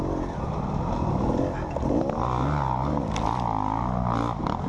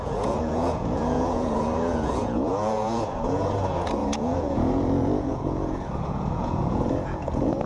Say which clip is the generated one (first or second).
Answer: second